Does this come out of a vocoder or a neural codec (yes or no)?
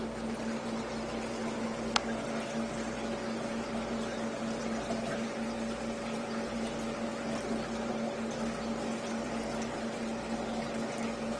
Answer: no